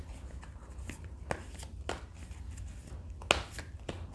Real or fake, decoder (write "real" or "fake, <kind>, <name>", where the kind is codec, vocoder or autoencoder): real